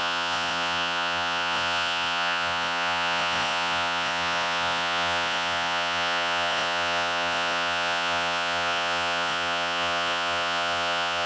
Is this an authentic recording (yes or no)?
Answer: no